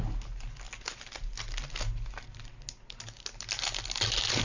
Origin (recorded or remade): recorded